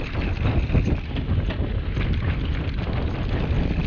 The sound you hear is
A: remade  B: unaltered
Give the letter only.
B